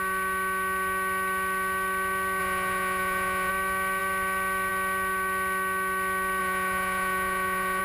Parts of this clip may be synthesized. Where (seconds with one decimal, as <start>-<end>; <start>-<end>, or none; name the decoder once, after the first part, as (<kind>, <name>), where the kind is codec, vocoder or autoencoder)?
2.4-3.5 (vocoder, Vocos); 6.4-7.8